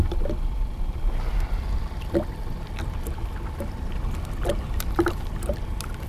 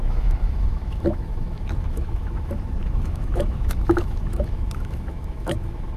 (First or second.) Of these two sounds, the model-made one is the second